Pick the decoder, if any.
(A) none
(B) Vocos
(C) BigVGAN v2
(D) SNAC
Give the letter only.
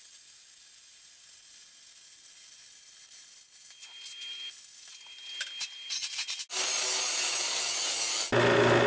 A